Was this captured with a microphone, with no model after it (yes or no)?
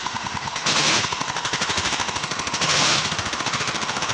no